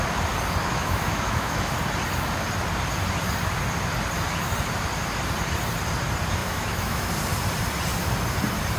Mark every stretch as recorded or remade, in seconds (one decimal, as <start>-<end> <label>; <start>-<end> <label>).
0.0-0.6 recorded; 0.6-1.8 remade; 1.8-6.4 recorded; 6.4-7.1 remade; 7.1-8.8 recorded